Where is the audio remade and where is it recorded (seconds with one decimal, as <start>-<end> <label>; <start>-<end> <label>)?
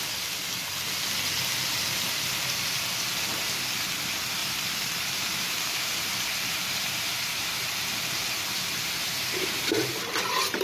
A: 0.0-4.4 recorded; 4.4-9.5 remade; 9.5-10.6 recorded